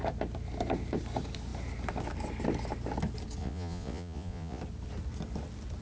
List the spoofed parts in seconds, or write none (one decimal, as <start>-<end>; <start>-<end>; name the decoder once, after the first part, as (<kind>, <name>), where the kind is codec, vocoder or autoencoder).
3.4-4.6 (vocoder, Vocos)